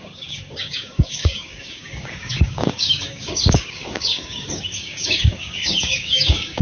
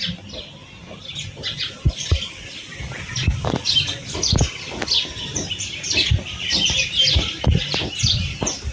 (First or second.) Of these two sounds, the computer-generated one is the first